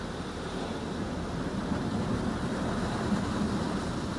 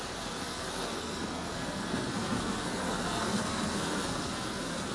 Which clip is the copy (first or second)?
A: second